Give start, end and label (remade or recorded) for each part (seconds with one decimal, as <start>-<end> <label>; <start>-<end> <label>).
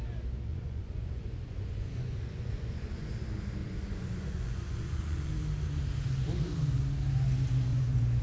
0.0-0.5 recorded; 0.5-3.1 remade; 3.1-3.6 recorded; 3.6-5.3 remade; 5.3-7.7 recorded; 7.7-8.2 remade